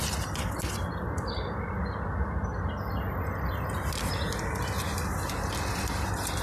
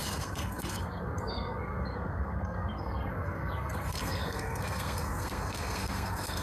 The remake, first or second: second